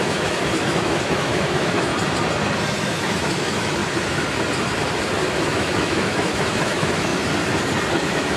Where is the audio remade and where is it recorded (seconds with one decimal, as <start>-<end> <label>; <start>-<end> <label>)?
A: 0.0-1.9 remade; 1.9-2.8 recorded; 2.8-3.8 remade; 3.8-5.5 recorded; 5.5-7.1 remade; 7.1-7.9 recorded; 7.9-8.4 remade